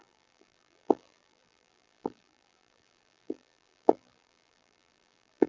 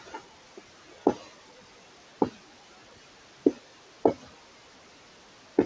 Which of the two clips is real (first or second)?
second